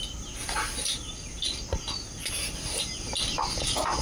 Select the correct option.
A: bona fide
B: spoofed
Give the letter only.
A